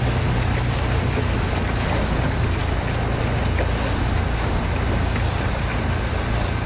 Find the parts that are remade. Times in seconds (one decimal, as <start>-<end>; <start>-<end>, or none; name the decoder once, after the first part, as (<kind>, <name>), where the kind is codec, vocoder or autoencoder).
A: none